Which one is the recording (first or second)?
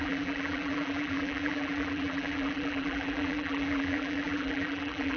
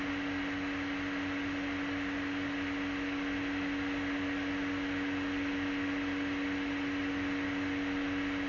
second